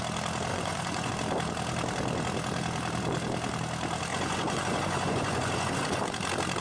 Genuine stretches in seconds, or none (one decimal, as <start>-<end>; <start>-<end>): 0.0-0.5; 1.1-4.1; 6.0-6.6